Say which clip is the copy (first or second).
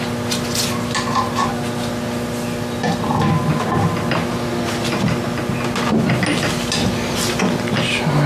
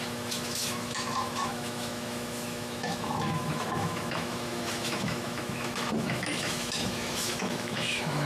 second